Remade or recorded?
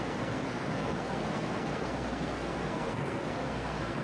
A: remade